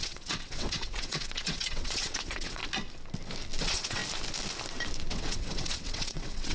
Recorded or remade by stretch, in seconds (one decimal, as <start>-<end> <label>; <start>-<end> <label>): 0.0-2.6 remade; 2.6-3.6 recorded; 3.6-4.0 remade; 4.0-5.1 recorded; 5.1-6.5 remade